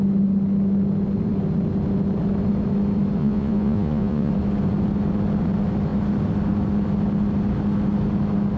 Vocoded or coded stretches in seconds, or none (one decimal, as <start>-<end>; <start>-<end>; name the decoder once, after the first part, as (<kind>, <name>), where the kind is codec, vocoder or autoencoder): 3.2-4.3 (vocoder, Vocos)